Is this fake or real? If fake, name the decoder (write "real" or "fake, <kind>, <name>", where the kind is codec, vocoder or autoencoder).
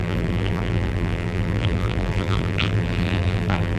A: fake, vocoder, BigVGAN v2